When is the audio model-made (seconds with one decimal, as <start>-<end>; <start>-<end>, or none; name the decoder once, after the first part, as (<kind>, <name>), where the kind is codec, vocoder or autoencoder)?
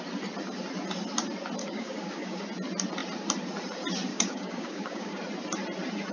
1.6-2.4 (codec, DAC); 4.1-5.2